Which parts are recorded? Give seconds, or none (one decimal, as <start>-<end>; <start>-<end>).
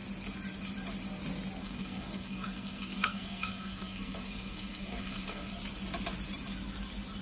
0.0-1.6; 5.5-7.2